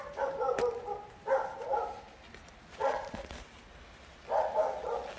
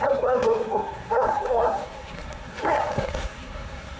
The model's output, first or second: second